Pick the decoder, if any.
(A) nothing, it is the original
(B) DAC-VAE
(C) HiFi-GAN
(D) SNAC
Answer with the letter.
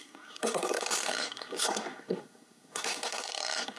D